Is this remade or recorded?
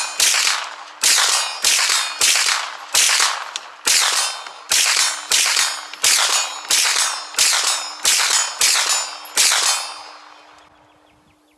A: recorded